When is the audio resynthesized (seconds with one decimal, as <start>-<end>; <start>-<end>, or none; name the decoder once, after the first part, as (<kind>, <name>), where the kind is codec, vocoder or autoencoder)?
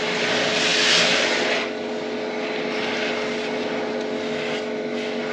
none